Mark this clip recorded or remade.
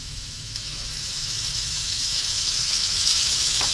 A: remade